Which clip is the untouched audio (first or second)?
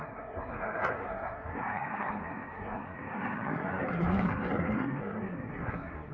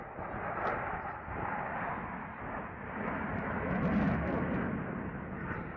second